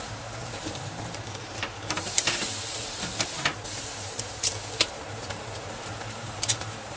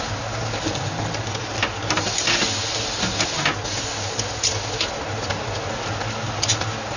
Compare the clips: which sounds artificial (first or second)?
first